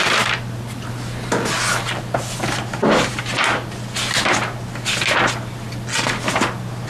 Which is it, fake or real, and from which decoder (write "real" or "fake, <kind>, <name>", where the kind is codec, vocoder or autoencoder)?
real